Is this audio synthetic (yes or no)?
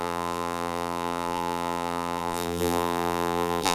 yes